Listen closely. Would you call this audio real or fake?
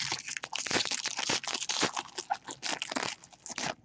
real